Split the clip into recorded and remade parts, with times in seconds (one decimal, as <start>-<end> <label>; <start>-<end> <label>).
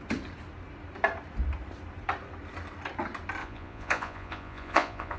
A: 0.0-3.4 recorded; 3.4-5.2 remade